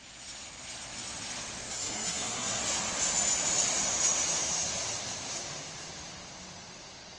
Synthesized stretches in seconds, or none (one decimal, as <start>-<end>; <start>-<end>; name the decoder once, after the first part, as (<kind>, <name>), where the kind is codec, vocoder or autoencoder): 1.6-2.6 (codec, SNAC)